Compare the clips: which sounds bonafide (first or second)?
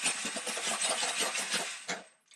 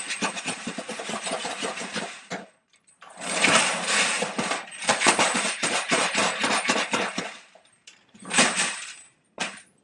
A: first